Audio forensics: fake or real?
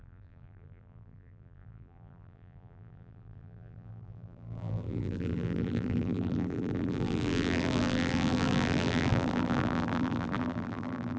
fake